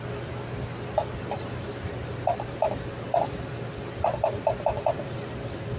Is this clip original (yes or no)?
yes